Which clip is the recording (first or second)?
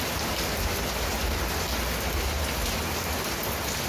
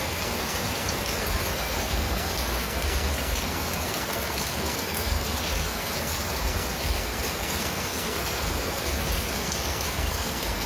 first